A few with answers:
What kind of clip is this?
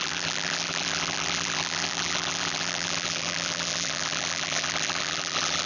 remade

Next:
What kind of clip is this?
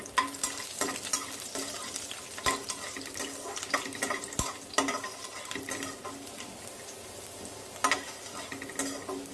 recorded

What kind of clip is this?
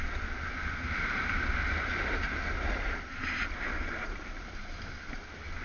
recorded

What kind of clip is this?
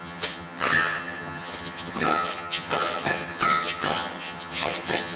remade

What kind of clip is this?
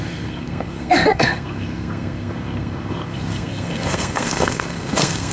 remade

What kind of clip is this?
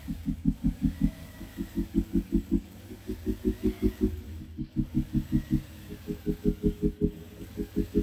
remade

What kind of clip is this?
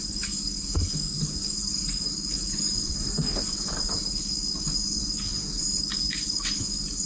remade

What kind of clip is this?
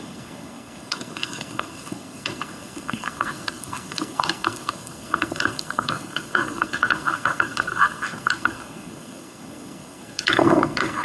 remade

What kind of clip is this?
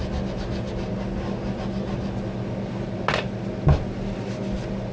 recorded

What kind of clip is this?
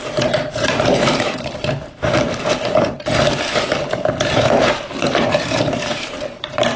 remade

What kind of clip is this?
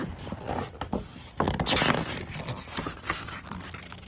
recorded